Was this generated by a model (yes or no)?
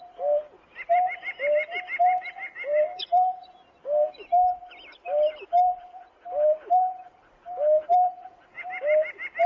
no